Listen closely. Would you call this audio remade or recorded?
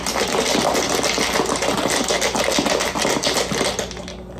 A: recorded